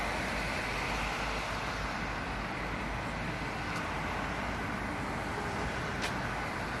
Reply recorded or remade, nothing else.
recorded